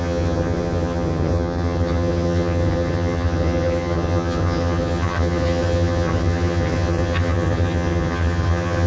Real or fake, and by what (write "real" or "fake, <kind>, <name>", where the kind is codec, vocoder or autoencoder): fake, vocoder, HiFi-GAN